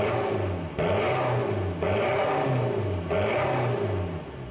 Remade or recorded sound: recorded